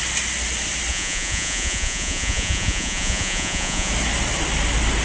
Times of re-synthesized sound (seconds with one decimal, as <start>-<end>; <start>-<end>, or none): 0.9-3.9